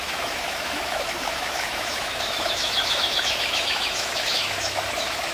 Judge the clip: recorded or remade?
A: remade